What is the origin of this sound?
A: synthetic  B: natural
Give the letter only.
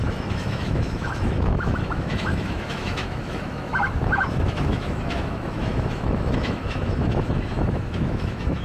A